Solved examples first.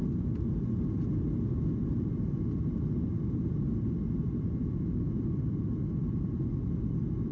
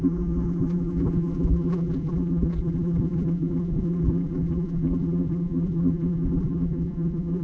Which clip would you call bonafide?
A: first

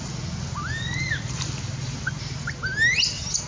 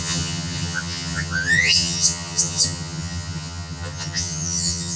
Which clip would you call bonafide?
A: first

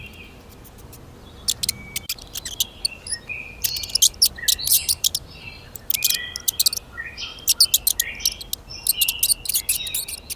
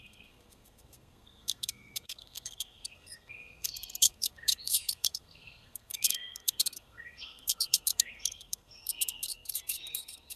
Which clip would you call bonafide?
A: first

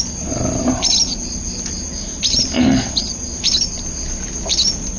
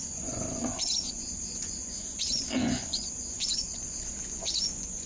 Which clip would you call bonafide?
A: first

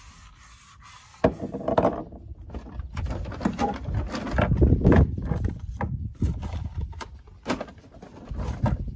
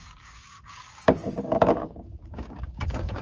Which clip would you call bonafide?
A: first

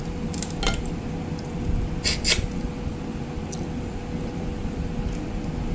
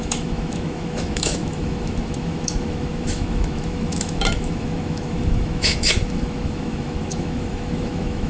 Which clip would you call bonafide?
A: first